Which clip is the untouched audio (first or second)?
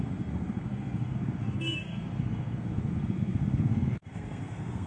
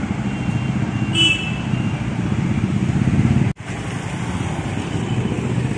second